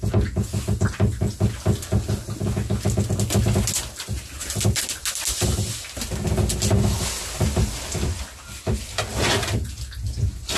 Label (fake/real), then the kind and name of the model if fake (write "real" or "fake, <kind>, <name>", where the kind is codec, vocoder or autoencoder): real